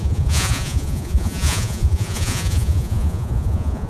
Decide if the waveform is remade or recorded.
remade